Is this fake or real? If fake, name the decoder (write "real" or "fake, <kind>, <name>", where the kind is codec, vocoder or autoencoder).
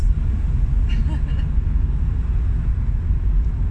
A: real